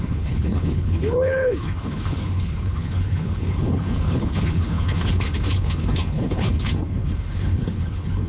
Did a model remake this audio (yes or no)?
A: yes